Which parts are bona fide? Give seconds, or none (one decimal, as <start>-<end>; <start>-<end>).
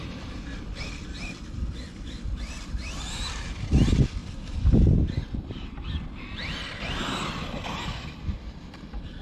0.0-9.2